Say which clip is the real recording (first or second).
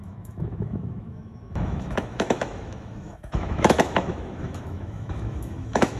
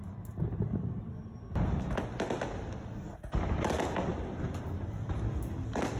second